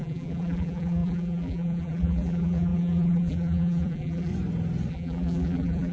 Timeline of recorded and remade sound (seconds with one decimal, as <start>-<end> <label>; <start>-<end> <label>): 0.0-4.3 remade; 4.3-4.9 recorded; 4.9-5.9 remade